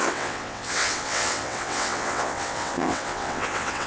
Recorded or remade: remade